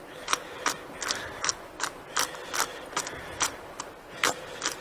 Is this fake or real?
real